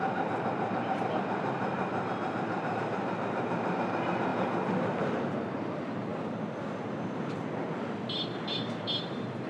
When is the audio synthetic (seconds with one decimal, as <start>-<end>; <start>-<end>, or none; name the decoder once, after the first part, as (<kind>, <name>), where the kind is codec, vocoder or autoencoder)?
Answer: 0.0-6.1 (vocoder, BigVGAN v2); 8.8-9.5